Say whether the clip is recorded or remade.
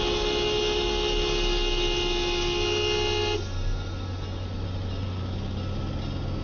recorded